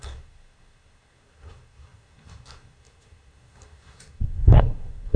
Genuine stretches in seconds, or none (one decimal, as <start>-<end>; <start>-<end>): none